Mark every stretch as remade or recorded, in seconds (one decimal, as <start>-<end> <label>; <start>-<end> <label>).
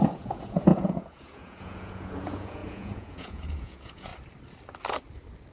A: 0.0-4.1 remade; 4.1-5.5 recorded